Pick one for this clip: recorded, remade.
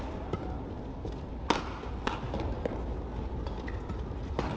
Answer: recorded